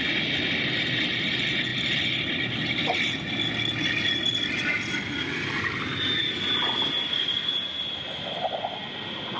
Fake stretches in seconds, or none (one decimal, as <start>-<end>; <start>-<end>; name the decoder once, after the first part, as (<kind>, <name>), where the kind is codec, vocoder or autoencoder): none